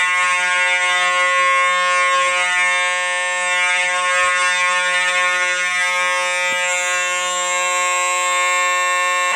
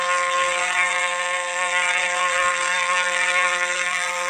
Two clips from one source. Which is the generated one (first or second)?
second